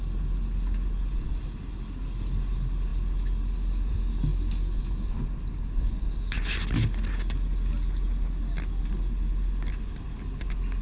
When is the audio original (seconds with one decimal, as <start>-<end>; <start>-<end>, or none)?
0.0-10.8

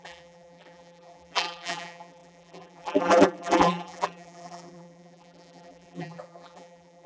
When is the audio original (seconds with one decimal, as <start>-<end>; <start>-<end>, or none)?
none

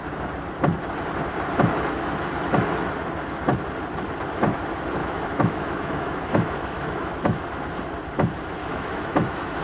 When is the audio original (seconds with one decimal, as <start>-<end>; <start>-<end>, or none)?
0.0-5.0; 7.1-8.6

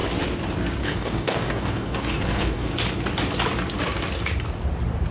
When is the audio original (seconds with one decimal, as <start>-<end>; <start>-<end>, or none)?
0.0-0.8; 2.7-5.1

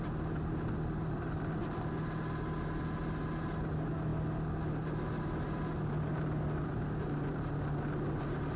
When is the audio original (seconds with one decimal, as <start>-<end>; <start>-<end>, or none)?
0.0-8.6

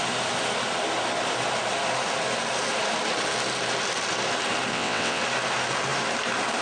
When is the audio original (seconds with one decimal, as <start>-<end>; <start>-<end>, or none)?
0.0-4.7; 5.2-6.6

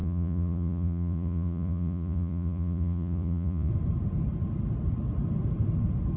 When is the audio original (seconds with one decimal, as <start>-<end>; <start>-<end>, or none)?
3.7-6.2